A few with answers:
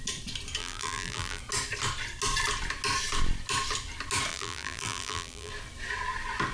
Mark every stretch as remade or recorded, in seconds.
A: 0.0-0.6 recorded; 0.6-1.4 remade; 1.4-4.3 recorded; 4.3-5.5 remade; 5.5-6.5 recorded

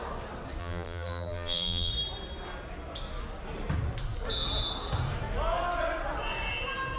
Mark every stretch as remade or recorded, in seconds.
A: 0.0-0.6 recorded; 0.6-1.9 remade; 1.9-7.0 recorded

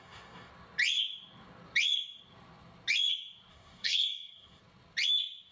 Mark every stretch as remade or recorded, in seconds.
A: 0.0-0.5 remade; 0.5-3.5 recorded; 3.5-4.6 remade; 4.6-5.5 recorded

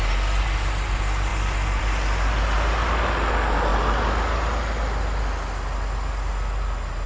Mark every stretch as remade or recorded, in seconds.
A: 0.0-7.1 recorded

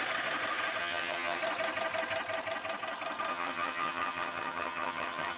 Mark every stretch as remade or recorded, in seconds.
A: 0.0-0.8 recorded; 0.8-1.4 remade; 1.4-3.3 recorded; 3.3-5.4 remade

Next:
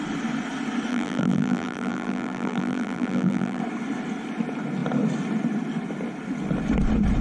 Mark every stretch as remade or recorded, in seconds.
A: 0.0-0.9 recorded; 0.9-3.6 remade; 3.6-7.2 recorded